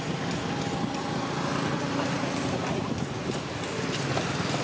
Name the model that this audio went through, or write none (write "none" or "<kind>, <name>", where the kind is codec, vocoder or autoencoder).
none